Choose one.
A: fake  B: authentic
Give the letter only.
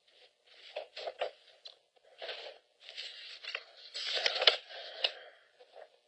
B